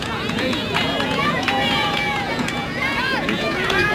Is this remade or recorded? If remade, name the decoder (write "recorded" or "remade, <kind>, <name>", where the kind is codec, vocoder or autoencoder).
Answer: remade, vocoder, Vocos